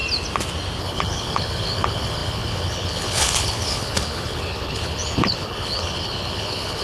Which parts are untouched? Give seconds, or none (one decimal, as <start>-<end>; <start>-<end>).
0.0-0.8